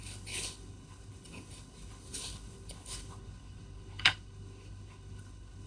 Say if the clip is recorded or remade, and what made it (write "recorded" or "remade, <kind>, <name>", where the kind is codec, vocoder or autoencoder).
remade, codec, HILCodec